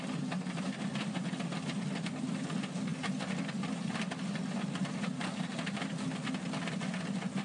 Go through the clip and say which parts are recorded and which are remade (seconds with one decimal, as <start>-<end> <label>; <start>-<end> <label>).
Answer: 0.0-7.4 recorded